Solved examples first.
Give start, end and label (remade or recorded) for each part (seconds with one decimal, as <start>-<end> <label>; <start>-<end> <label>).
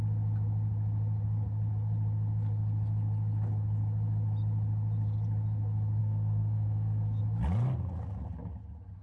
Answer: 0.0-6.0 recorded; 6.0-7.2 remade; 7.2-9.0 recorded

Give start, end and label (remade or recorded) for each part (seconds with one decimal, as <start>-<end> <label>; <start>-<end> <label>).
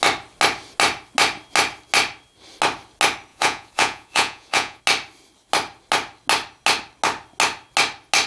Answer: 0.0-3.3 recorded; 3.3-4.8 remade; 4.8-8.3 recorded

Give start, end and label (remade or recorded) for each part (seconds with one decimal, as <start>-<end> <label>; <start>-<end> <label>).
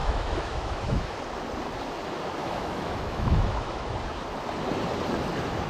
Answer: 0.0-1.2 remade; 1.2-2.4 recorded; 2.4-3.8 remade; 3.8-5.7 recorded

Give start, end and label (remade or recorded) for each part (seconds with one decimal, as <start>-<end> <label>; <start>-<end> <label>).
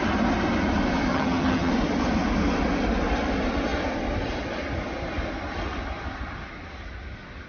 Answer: 0.0-1.1 recorded; 1.1-1.7 remade; 1.7-7.5 recorded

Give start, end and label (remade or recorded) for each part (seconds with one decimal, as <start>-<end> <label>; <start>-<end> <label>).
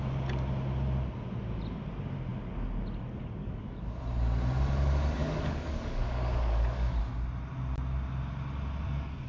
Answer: 0.0-3.4 recorded; 3.4-4.0 remade; 4.0-5.2 recorded; 5.2-7.0 remade; 7.0-9.3 recorded